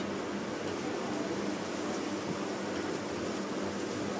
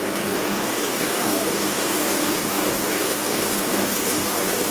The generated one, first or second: second